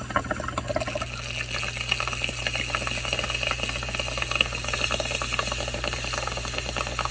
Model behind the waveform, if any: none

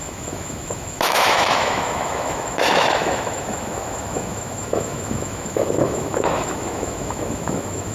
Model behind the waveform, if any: autoencoder, DAC-VAE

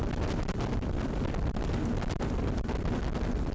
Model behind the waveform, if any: none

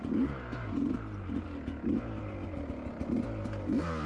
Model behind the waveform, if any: none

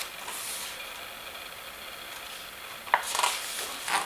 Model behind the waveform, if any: none